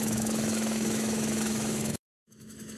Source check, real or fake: fake